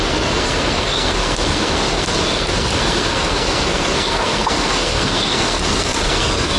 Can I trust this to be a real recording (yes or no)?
no